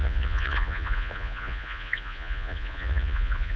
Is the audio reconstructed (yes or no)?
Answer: yes